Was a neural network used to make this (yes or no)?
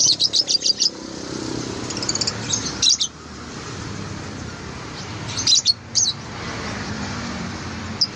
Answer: yes